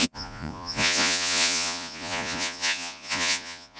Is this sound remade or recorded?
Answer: remade